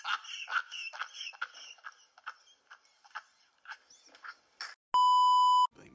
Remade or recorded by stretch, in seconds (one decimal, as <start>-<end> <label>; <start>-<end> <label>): 0.0-5.9 recorded